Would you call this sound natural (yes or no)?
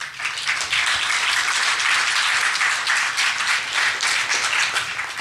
yes